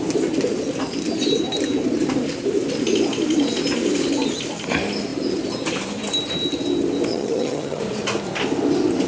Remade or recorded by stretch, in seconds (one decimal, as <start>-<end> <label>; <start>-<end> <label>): 0.0-7.1 recorded; 7.1-7.8 remade; 7.8-9.1 recorded